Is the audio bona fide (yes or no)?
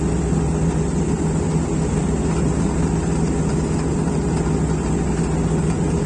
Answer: yes